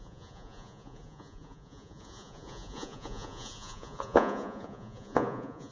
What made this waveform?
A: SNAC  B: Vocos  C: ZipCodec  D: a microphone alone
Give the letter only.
B